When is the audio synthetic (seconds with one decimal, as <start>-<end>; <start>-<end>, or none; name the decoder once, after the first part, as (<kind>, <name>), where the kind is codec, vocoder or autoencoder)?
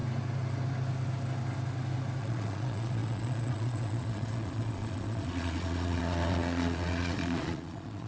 2.2-8.1 (vocoder, Vocos)